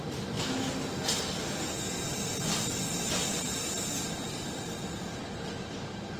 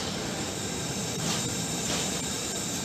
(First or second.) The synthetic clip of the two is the second